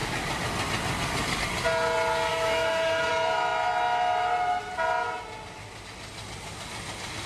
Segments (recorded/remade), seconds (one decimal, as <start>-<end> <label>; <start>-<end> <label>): 0.0-2.3 recorded; 2.3-3.1 remade; 3.1-7.3 recorded